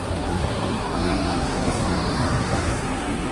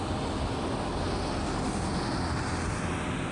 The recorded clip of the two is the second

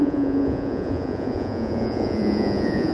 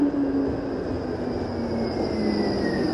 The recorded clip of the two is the second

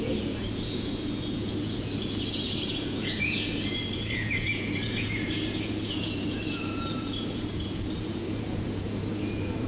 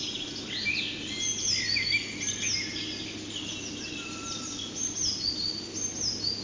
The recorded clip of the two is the second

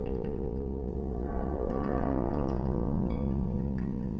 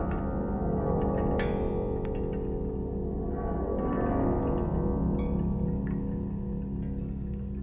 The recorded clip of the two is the second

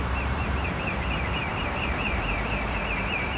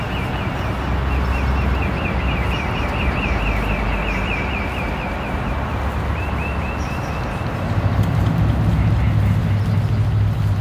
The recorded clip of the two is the second